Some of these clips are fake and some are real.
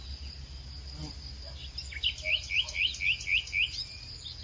real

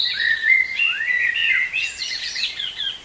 fake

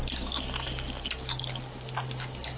real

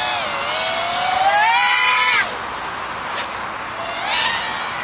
real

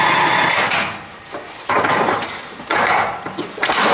real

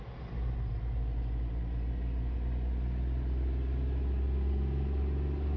real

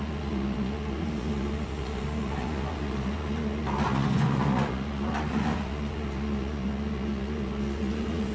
fake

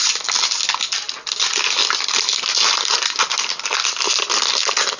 real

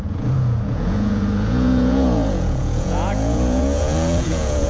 fake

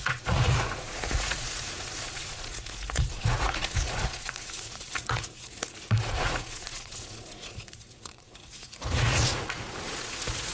fake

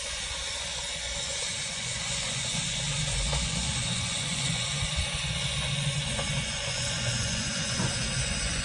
fake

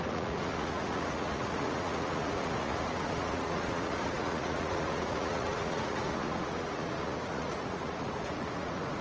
fake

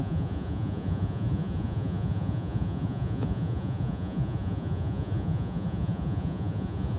fake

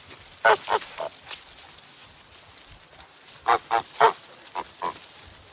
real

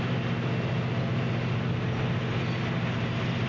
real